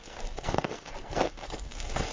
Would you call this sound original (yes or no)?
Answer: no